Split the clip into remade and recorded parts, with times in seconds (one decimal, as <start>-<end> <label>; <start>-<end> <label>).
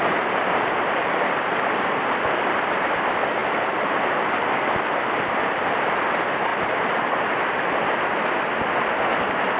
0.0-9.6 recorded